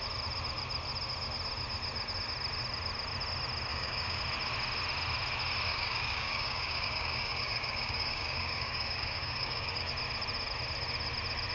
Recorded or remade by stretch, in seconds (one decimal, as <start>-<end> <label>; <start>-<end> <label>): 0.0-3.7 recorded; 3.7-4.2 remade; 4.2-5.7 recorded; 5.7-9.9 remade; 9.9-11.5 recorded